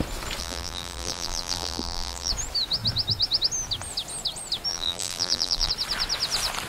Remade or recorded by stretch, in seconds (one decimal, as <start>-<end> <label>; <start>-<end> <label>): 0.0-0.4 recorded; 0.4-2.3 remade; 2.3-4.7 recorded; 4.7-5.7 remade; 5.7-6.7 recorded